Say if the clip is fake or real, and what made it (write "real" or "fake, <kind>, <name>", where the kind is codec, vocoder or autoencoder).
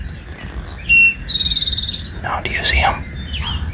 real